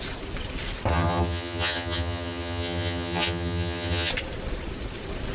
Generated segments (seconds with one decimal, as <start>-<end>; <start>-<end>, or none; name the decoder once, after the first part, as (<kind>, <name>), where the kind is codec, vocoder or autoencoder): 0.9-4.1 (vocoder, HiFi-GAN)